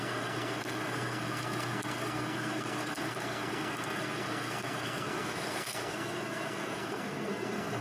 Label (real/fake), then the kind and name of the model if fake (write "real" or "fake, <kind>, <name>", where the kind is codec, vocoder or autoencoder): fake, codec, SNAC